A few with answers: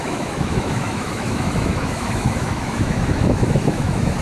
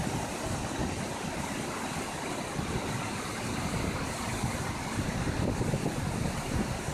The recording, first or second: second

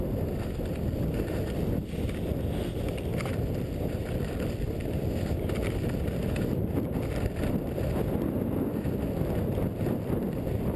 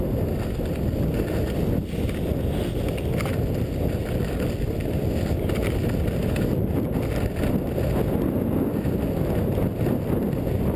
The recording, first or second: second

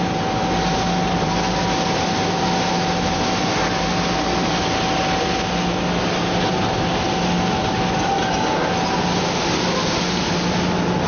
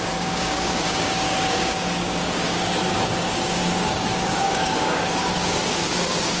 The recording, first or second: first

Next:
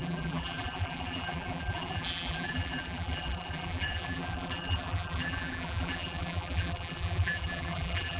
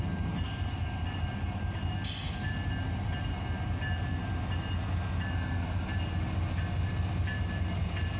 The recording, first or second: second